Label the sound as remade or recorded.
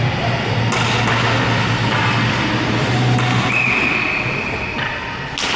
recorded